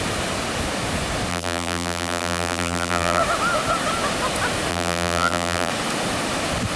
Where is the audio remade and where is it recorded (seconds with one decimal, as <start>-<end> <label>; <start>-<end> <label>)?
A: 0.0-1.3 recorded; 1.3-3.2 remade; 3.2-4.7 recorded; 4.7-5.7 remade; 5.7-6.8 recorded